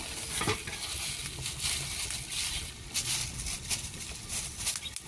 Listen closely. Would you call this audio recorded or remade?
recorded